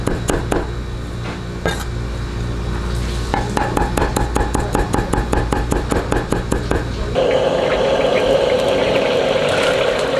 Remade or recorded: recorded